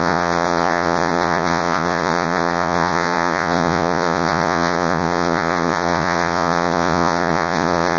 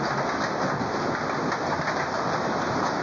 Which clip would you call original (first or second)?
second